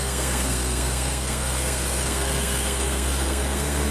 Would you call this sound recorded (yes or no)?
no